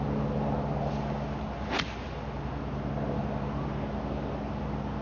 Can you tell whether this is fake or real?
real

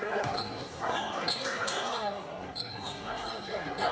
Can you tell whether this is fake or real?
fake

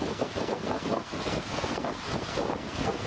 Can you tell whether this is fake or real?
fake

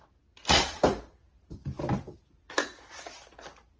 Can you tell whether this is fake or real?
real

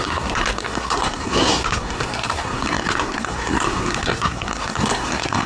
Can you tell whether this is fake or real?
fake